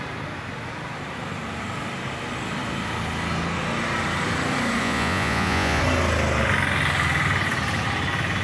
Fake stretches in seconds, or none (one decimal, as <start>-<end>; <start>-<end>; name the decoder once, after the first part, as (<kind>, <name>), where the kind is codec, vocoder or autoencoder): 4.8-5.8 (vocoder, Vocos)